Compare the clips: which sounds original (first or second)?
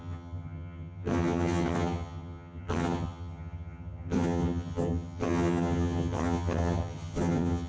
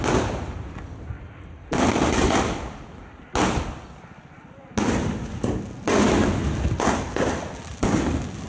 second